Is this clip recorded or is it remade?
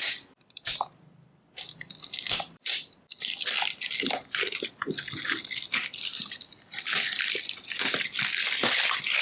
remade